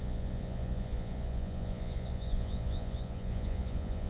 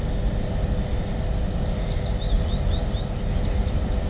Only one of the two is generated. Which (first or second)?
first